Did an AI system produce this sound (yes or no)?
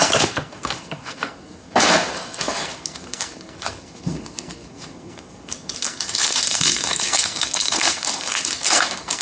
yes